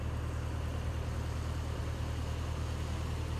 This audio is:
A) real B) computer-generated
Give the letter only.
A